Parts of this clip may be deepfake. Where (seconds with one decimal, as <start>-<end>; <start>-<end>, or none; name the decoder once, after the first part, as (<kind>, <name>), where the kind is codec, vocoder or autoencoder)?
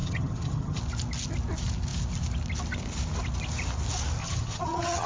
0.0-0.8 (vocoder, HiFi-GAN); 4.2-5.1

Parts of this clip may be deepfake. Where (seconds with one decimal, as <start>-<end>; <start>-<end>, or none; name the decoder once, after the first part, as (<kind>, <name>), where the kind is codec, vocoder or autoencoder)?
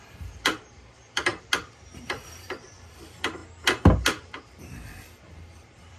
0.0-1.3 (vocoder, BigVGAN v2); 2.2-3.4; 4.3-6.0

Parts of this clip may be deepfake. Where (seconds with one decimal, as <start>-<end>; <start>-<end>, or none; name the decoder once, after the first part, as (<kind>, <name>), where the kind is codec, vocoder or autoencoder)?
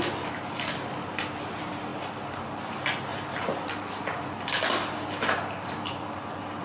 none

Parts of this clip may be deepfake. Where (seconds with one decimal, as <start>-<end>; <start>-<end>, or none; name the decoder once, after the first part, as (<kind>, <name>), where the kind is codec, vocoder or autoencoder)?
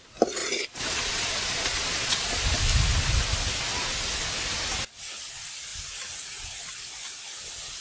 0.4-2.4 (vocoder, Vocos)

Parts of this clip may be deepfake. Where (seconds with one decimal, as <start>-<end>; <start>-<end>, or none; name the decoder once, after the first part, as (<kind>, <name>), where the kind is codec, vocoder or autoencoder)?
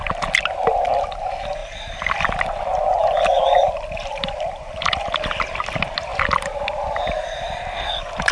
4.1-5.0 (vocoder, BigVGAN v2)